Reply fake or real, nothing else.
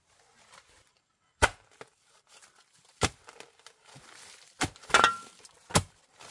real